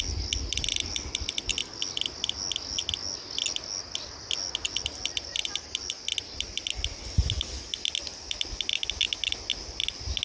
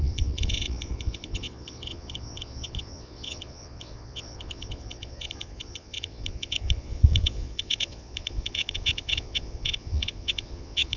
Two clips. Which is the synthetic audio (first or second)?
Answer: second